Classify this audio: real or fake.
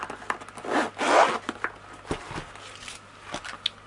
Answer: real